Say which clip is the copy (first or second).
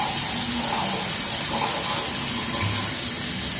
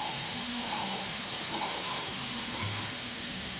second